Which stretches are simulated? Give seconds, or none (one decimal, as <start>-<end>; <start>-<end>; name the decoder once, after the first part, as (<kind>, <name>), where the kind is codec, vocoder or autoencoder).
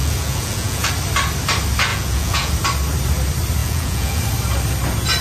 0.0-0.9 (vocoder, Vocos); 1.9-2.5; 3.6-4.2